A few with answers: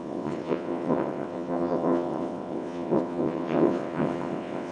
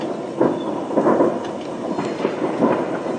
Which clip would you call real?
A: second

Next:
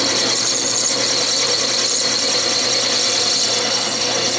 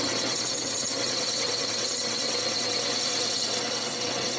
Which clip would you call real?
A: first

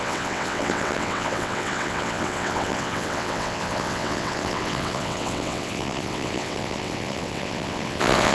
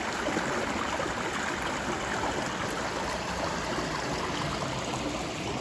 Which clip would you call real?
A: second